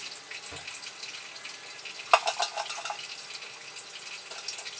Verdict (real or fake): real